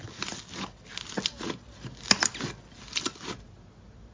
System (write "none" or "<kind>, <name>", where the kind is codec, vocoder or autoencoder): none